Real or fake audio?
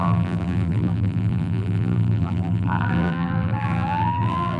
fake